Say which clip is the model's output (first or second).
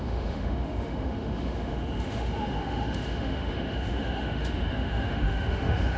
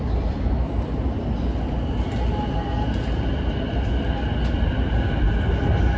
first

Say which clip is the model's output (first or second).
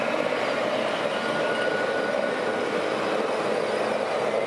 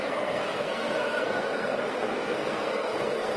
second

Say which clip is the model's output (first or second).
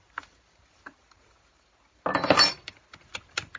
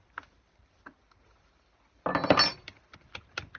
first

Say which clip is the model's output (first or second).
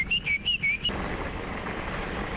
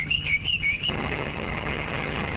second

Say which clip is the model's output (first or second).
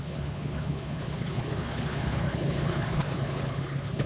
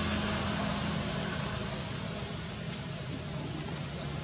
first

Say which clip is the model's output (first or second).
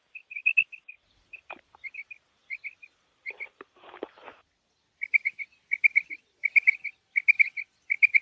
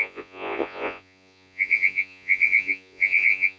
second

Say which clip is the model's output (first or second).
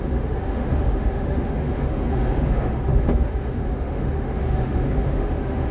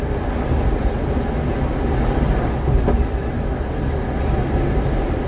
first